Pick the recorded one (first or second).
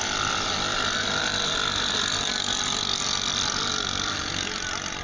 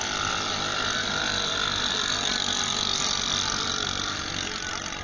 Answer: second